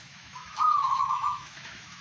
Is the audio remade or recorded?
remade